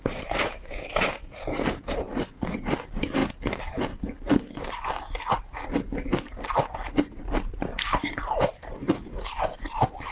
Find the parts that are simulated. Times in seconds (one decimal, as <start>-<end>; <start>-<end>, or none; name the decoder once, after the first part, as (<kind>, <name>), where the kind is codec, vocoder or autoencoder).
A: 0.0-3.2 (vocoder, BigVGAN v2); 6.5-10.1

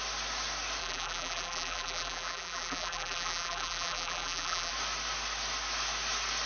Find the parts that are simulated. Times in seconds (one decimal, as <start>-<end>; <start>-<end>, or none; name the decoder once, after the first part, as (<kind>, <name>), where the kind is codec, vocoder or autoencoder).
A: 0.8-4.7 (vocoder, BigVGAN v2)

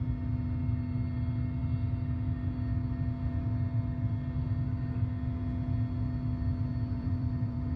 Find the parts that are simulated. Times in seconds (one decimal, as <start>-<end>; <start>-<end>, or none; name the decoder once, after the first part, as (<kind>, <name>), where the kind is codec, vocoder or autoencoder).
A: 6.7-7.8 (vocoder, BigVGAN v2)

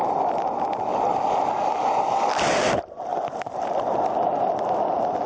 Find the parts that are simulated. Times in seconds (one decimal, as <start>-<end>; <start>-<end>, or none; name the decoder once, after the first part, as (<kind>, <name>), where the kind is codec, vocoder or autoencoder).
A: 0.9-2.7 (vocoder, BigVGAN v2); 3.1-4.1